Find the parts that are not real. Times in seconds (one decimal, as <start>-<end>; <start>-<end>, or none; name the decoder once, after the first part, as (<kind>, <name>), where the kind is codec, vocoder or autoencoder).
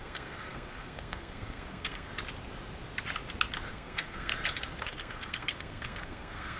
0.0-2.1 (codec, SNAC); 3.7-4.3; 4.8-6.6